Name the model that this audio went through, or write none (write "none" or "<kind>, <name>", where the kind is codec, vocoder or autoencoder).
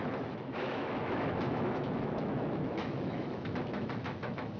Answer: autoencoder, DAC-VAE